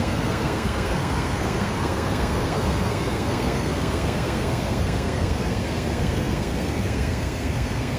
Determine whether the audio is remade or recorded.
remade